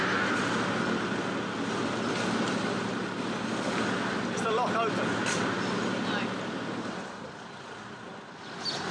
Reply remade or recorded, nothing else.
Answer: recorded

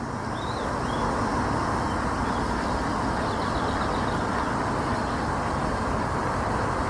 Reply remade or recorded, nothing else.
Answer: recorded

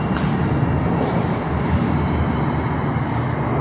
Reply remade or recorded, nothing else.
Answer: recorded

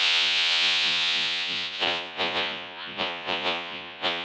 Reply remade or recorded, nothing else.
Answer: remade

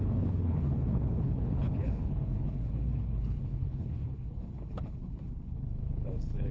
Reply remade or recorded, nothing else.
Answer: remade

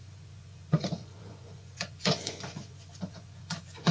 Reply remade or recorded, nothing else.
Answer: remade